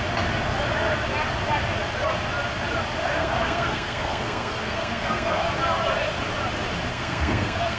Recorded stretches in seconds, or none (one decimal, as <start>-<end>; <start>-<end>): 0.0-3.2; 5.5-6.9